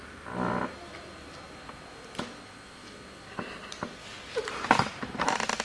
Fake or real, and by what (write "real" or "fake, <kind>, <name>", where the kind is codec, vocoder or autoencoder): real